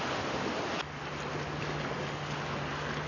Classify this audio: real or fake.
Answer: real